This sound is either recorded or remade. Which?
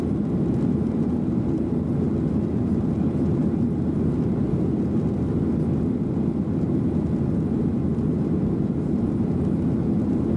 recorded